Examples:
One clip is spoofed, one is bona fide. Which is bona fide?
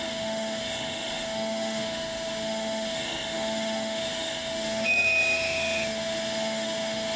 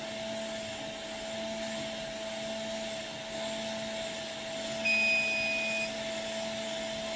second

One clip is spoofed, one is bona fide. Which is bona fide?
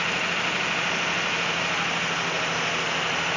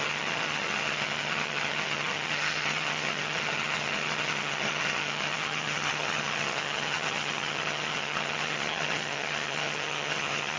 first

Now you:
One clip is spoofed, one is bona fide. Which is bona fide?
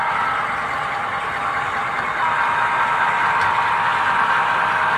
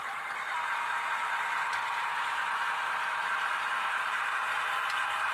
first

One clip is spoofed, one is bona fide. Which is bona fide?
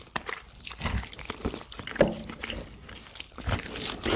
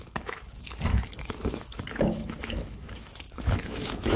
first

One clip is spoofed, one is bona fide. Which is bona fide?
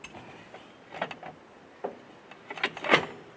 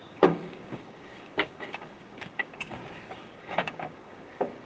first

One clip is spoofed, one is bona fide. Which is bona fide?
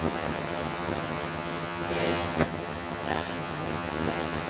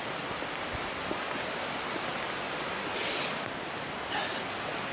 second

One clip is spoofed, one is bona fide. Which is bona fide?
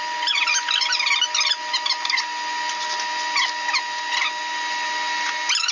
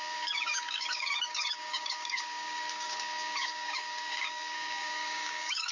first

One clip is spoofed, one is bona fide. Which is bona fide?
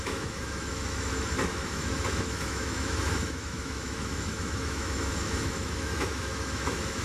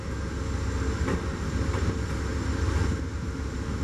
second